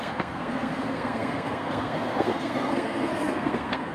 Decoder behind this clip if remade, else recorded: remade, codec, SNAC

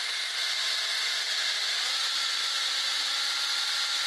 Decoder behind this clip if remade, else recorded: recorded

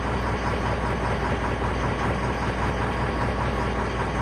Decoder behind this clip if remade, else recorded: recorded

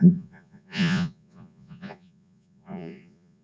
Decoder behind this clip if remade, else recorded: remade, vocoder, Vocos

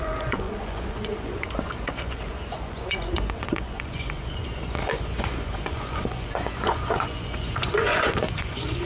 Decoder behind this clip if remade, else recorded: remade, vocoder, Vocos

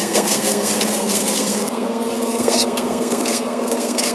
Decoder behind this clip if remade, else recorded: remade, codec, SNAC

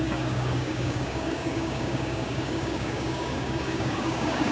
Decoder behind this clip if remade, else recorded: remade, codec, DAC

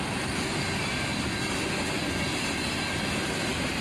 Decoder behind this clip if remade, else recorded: recorded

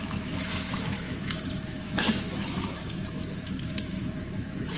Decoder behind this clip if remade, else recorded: remade, autoencoder, DAC-VAE